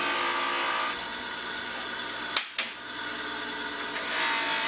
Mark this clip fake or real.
real